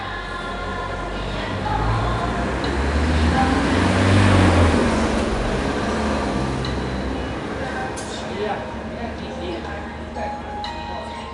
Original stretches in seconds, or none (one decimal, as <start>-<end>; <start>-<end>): 0.0-4.8; 5.5-11.3